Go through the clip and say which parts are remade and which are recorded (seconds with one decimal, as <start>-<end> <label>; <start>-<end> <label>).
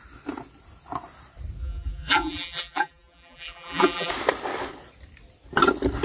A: 0.0-1.6 recorded; 1.6-4.1 remade; 4.1-6.0 recorded